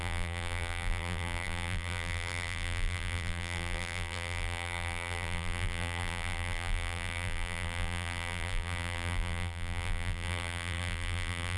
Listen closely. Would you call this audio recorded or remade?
remade